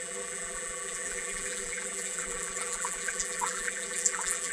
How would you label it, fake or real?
fake